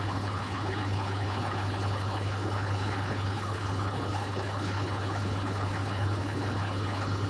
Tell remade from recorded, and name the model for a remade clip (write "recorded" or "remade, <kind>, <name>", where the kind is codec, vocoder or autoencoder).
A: remade, codec, HILCodec